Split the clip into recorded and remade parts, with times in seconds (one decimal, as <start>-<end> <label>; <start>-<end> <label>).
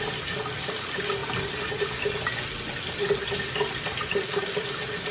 0.0-5.1 recorded